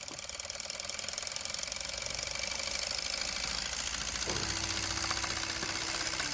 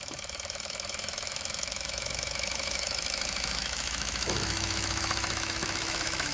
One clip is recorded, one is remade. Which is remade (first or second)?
second